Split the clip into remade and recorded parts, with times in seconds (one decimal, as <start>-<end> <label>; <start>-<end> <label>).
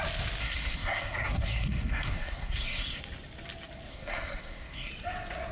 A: 0.0-0.4 recorded; 0.4-3.0 remade; 3.0-3.9 recorded; 3.9-4.9 remade; 4.9-5.5 recorded